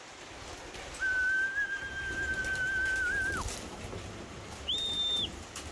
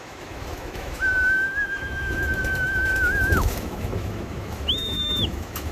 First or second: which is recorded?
first